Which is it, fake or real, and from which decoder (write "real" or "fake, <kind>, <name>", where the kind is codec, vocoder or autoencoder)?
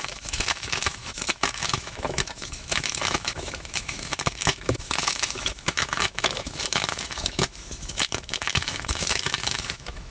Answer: fake, autoencoder, DAC-VAE